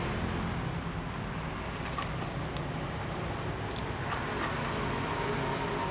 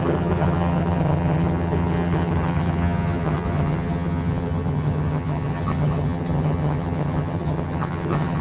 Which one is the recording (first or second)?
first